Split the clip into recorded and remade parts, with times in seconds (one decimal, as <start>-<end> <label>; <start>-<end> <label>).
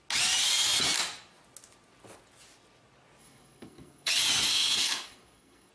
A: 0.0-3.2 recorded; 3.2-4.1 remade; 4.1-4.5 recorded; 4.5-5.7 remade